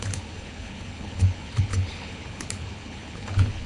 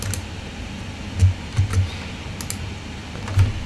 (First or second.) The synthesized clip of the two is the first